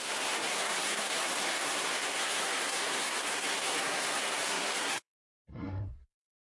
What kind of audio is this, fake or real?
fake